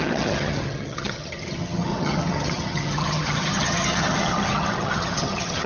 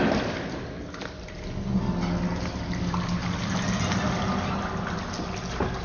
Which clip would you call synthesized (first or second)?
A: first